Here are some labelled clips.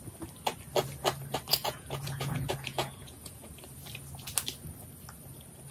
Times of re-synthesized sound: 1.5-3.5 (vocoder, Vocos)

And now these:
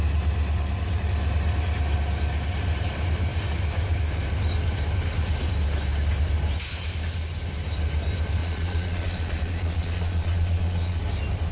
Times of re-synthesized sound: 8.4-11.0 (vocoder, Vocos)

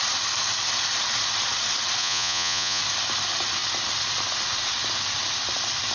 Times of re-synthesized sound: 2.0-2.8 (vocoder, Vocos)

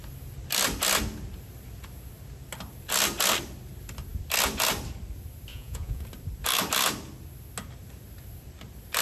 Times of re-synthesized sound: 5.5-6.0 (vocoder, Vocos)